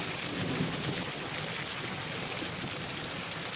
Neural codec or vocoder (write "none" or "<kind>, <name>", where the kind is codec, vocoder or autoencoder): none